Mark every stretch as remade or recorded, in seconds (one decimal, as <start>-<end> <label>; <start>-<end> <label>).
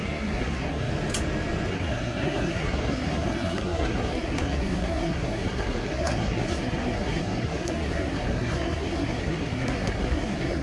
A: 0.0-0.9 remade; 0.9-1.7 recorded; 1.7-10.6 remade